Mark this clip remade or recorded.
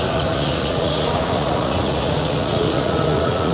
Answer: remade